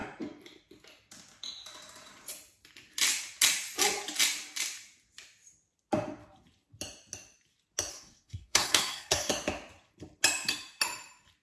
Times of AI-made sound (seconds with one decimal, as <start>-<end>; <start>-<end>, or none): 7.9-9.3